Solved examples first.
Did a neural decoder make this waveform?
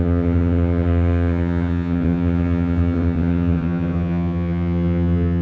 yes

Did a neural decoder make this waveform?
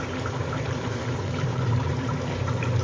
yes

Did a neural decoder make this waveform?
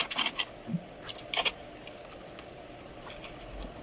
no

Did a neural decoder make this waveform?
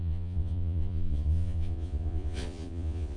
yes